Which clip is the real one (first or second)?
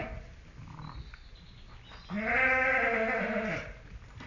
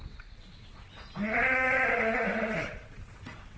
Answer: first